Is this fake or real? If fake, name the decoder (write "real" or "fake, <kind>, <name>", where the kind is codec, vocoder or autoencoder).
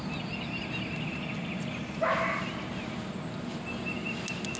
real